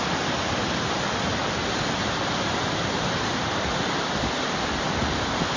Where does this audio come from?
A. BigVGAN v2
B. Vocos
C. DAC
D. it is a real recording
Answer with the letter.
D